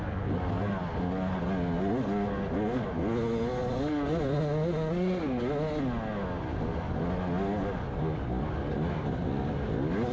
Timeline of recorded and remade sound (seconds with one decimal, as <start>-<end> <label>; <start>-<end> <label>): 0.0-10.1 recorded